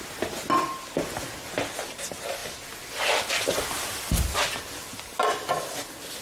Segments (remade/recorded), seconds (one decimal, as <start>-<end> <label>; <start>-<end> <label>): 0.0-6.2 recorded